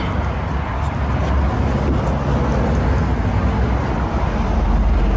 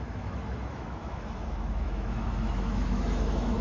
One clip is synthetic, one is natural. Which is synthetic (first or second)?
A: second